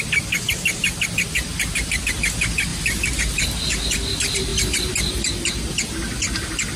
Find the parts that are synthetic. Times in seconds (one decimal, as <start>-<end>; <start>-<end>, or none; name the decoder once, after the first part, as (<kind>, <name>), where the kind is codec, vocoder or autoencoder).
2.7-3.2 (vocoder, BigVGAN v2)